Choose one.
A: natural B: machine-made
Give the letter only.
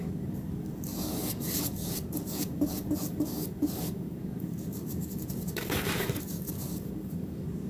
B